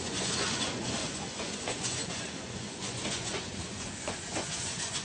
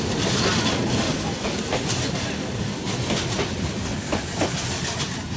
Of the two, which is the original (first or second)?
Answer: second